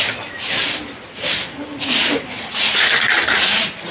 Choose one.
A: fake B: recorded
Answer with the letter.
B